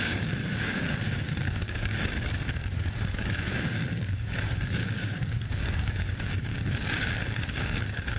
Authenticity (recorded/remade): remade